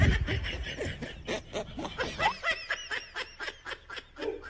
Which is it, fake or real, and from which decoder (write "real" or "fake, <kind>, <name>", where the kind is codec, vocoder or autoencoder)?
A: real